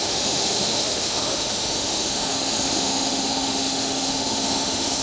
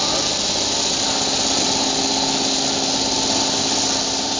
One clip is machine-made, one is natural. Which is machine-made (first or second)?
first